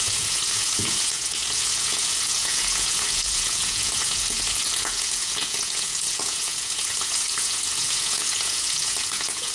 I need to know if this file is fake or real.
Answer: fake